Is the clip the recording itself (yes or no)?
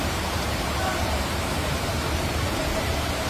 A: no